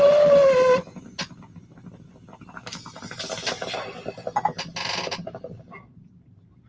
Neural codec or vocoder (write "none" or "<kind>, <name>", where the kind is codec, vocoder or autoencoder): none